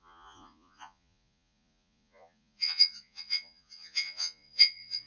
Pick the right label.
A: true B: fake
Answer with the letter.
B